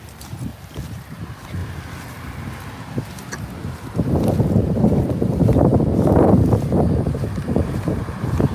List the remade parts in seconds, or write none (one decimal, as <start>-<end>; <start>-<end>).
0.0-0.5; 1.2-1.6; 4.4-5.7; 7.2-8.5